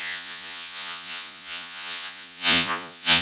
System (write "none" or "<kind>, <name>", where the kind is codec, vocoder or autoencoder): vocoder, Vocos